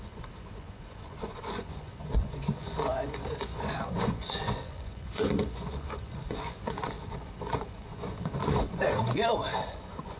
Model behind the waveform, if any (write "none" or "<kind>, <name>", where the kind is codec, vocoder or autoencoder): vocoder, Vocos